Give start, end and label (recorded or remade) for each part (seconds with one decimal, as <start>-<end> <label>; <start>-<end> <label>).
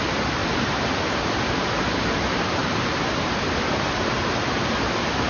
0.0-0.4 recorded; 0.4-2.2 remade; 2.2-2.6 recorded; 2.6-4.7 remade; 4.7-5.3 recorded